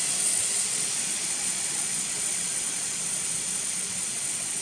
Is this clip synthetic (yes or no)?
yes